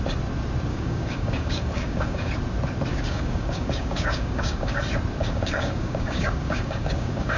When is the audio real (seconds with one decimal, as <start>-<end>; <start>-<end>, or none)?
0.0-0.7; 2.3-2.9; 4.8-5.2